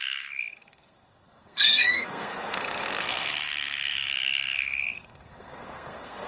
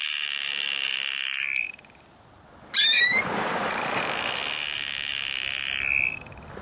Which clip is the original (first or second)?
second